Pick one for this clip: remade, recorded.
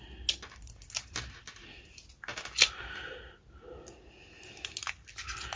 recorded